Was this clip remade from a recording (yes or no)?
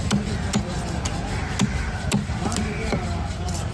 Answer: no